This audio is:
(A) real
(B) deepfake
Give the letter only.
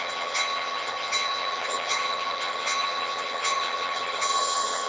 B